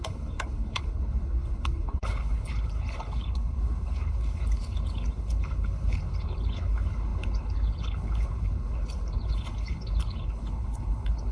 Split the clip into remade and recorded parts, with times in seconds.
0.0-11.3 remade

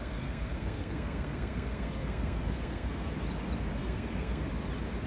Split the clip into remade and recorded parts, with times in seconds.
0.0-3.1 remade; 3.1-3.8 recorded; 3.8-4.5 remade; 4.5-5.1 recorded

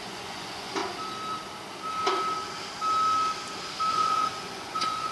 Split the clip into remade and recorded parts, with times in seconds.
0.0-0.8 remade; 0.8-3.9 recorded; 3.9-5.1 remade

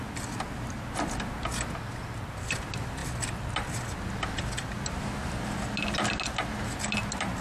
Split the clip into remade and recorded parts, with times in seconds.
0.0-7.4 recorded

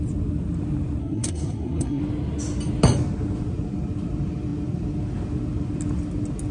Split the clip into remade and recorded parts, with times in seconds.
0.0-1.0 recorded; 1.0-2.0 remade; 2.0-6.5 recorded

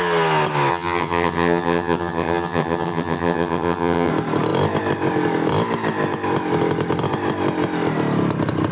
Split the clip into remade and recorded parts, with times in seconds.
0.0-0.7 recorded; 0.7-4.1 remade; 4.1-8.7 recorded

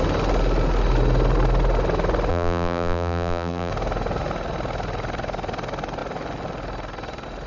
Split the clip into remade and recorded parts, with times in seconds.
0.0-2.3 recorded; 2.3-3.7 remade; 3.7-7.5 recorded